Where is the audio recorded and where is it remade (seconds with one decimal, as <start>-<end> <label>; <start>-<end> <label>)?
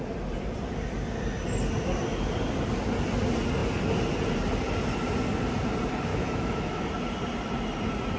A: 0.0-6.1 recorded; 6.1-6.9 remade; 6.9-8.2 recorded